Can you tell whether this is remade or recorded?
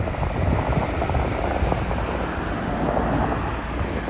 recorded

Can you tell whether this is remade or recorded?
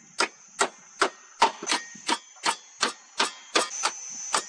recorded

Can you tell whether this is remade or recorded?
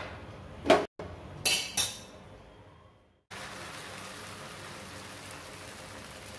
recorded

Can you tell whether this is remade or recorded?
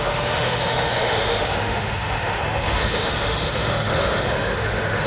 remade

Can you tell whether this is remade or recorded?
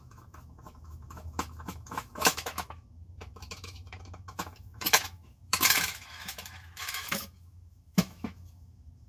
remade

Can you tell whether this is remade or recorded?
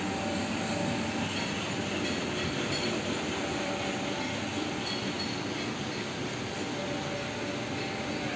recorded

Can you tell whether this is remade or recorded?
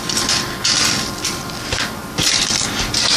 recorded